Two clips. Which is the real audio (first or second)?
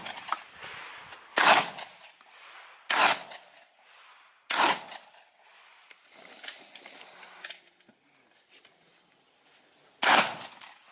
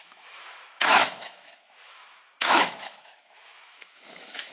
first